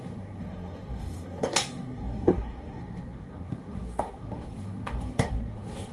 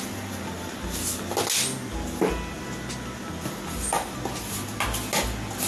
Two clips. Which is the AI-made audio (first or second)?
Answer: first